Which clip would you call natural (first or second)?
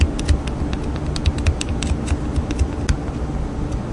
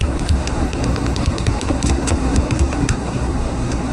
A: first